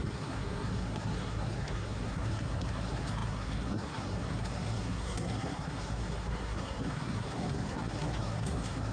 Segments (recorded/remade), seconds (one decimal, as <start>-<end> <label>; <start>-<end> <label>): 0.0-8.9 remade